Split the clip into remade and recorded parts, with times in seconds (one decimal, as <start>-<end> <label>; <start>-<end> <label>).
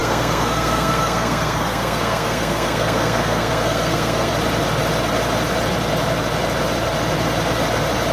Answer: 0.0-4.3 remade; 4.3-8.1 recorded